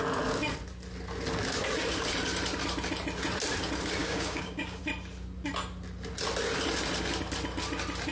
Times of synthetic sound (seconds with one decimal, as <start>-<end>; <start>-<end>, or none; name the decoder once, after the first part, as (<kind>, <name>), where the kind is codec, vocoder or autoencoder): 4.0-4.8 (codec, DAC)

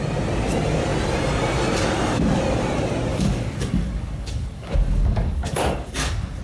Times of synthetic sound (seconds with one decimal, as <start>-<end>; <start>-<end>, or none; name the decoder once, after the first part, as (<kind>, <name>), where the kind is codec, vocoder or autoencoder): 3.1-6.4 (codec, DAC)

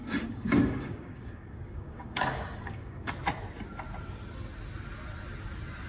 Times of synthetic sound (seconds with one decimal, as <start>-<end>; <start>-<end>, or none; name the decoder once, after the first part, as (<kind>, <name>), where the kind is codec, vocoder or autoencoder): 0.0-3.1 (codec, DAC)